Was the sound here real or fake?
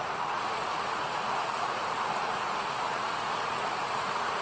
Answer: fake